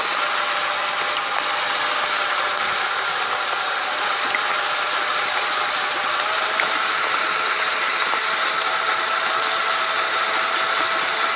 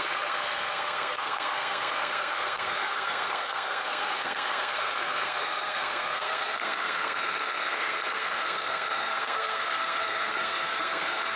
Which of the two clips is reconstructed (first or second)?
second